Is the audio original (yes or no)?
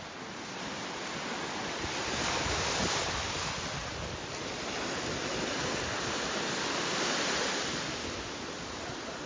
yes